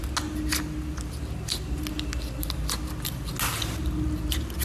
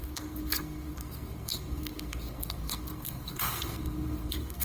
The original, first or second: first